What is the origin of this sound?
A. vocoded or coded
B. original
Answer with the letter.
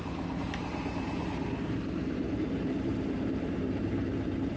A